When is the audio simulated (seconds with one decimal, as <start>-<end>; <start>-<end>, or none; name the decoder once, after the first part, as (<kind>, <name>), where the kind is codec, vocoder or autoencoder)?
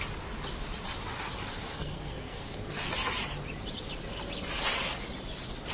1.7-2.9 (codec, SNAC)